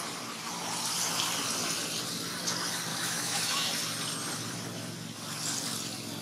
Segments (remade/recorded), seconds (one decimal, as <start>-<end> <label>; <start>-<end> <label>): 0.0-2.9 recorded; 2.9-3.7 remade; 3.7-6.2 recorded

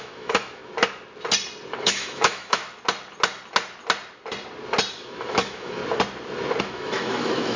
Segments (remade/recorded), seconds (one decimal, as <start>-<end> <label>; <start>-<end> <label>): 0.0-0.6 remade; 0.6-1.8 recorded; 1.8-2.6 remade; 2.6-4.9 recorded; 4.9-5.8 remade; 5.8-6.6 recorded; 6.6-7.6 remade